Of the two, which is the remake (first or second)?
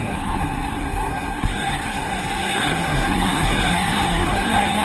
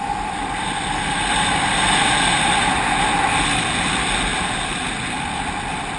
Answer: first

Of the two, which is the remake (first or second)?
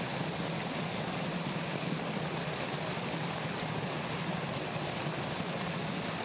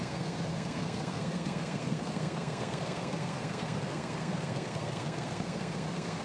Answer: second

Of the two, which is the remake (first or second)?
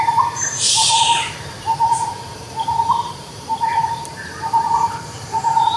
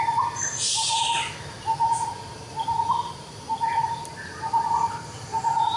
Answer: first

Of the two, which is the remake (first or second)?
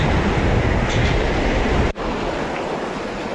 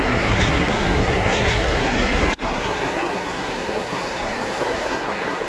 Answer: second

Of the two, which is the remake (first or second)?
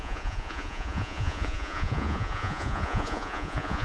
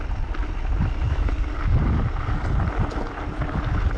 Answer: first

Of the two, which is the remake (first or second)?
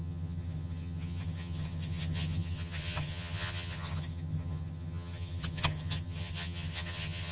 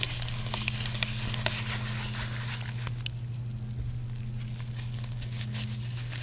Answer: first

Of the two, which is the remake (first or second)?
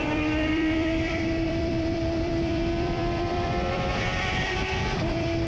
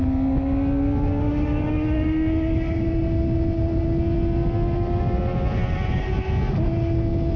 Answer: first